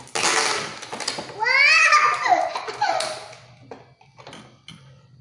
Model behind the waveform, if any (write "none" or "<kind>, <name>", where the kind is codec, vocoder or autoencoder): none